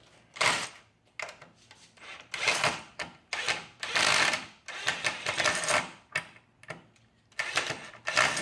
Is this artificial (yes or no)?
no